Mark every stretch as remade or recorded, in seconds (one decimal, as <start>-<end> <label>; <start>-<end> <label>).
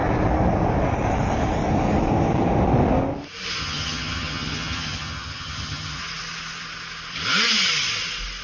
0.0-3.6 recorded; 3.6-6.0 remade; 6.0-8.4 recorded